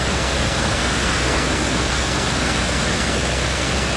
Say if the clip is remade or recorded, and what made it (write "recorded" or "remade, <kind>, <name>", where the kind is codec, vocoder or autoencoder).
remade, codec, SNAC